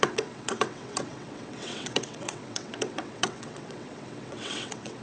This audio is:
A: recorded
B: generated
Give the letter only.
B